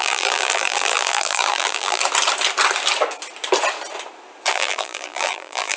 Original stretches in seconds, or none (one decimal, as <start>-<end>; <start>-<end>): 2.0-4.5